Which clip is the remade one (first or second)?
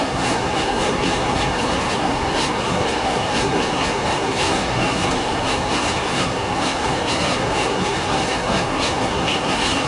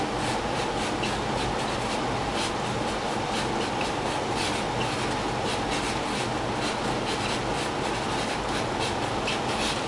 first